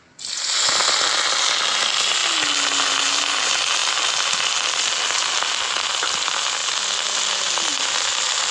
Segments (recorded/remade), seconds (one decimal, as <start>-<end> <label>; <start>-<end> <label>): 0.0-8.5 recorded